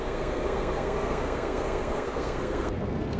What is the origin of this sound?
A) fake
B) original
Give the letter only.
A